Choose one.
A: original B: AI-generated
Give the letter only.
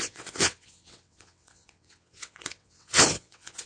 B